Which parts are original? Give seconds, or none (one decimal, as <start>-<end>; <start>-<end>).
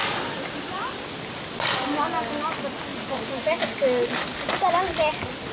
0.0-2.9; 3.6-5.5